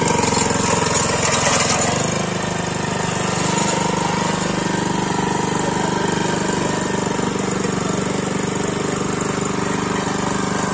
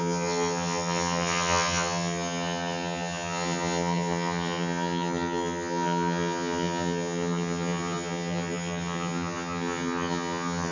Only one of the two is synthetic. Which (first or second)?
second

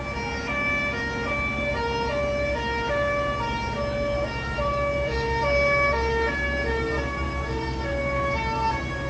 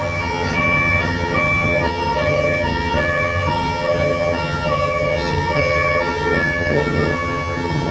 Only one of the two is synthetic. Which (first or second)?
second